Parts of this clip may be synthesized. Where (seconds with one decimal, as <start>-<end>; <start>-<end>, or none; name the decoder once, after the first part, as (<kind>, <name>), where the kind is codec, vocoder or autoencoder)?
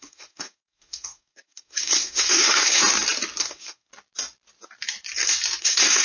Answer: 0.0-2.8 (codec, SNAC); 3.4-3.9; 5.6-6.0